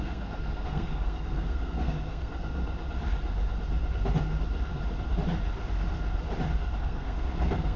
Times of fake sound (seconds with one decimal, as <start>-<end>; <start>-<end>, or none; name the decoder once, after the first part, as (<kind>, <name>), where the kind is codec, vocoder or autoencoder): 0.0-2.3 (codec, SNAC); 6.8-7.8